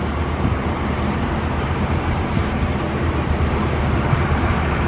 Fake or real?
fake